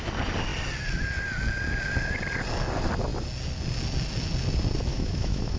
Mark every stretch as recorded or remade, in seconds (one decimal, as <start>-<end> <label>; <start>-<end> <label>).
0.0-4.9 recorded; 4.9-5.6 remade